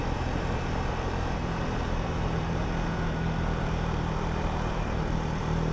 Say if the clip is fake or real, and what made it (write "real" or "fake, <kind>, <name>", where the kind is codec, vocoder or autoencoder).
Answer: fake, vocoder, BigVGAN v2